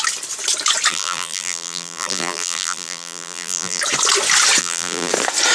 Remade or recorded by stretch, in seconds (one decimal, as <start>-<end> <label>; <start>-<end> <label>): 0.0-0.9 recorded; 0.9-3.8 remade; 3.8-4.6 recorded; 4.6-5.1 remade; 5.1-5.5 recorded